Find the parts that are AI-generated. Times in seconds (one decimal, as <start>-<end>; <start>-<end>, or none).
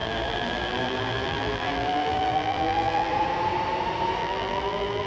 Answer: 0.0-3.1; 4.2-5.1